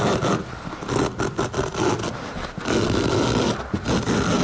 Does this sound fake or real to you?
real